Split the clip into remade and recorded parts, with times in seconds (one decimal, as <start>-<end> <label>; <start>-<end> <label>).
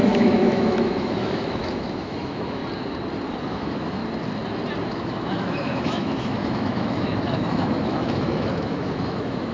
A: 0.0-2.6 remade; 2.6-3.4 recorded; 3.4-4.0 remade; 4.0-4.9 recorded; 4.9-9.5 remade